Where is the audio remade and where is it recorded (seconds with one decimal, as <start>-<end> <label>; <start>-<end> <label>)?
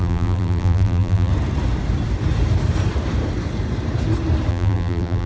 0.0-1.3 remade; 1.3-4.5 recorded; 4.5-5.3 remade